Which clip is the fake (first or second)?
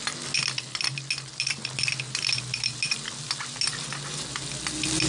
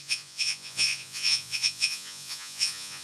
second